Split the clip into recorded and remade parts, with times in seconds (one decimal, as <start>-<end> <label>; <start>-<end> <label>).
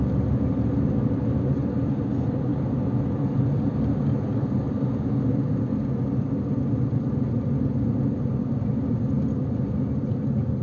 0.0-10.6 recorded